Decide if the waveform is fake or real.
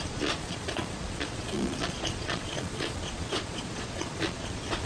fake